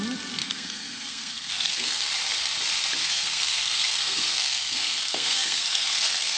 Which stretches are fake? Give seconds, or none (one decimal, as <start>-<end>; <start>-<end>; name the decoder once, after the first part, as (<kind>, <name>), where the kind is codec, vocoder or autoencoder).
0.4-2.1 (codec, SNAC); 3.0-6.4